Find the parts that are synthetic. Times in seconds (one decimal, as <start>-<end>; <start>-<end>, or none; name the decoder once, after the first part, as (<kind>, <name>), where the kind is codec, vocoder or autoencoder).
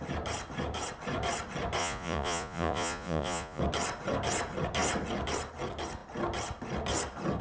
1.8-3.6 (vocoder, Vocos)